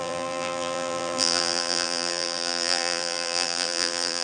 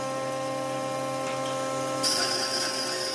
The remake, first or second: first